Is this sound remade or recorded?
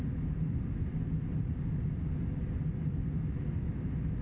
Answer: recorded